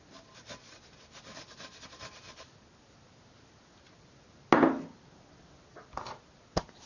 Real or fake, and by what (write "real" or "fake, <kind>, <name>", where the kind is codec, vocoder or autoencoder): real